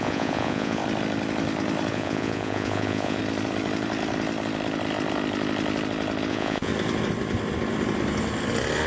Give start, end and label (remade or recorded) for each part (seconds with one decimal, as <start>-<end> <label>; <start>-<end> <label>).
0.0-0.8 remade; 0.8-1.9 recorded; 1.9-3.2 remade; 3.2-6.3 recorded; 6.3-6.7 remade; 6.7-8.9 recorded